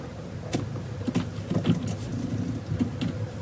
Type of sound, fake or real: real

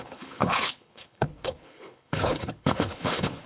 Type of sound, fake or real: fake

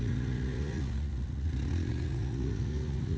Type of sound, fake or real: fake